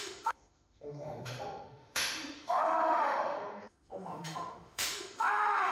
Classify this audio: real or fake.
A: fake